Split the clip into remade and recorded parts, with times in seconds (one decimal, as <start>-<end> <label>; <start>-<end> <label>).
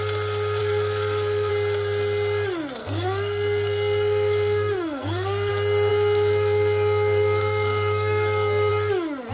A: 0.0-0.6 recorded; 0.6-1.5 remade; 1.5-2.8 recorded; 2.8-5.5 remade; 5.5-5.9 recorded; 5.9-8.7 remade; 8.7-9.3 recorded